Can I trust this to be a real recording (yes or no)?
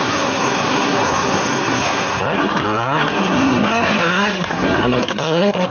no